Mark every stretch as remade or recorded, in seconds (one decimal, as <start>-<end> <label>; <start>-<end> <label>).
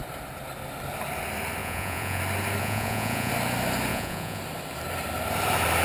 0.0-1.6 recorded; 1.6-2.2 remade; 2.2-2.6 recorded; 2.6-3.3 remade; 3.3-3.9 recorded; 3.9-4.4 remade; 4.4-5.8 recorded